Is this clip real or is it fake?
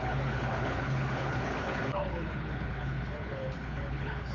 fake